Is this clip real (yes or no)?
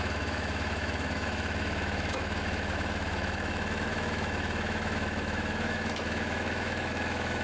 no